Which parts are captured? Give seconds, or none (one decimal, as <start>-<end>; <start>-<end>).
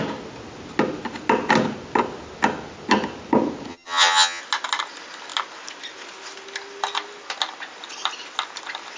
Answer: 0.0-3.7; 4.4-9.0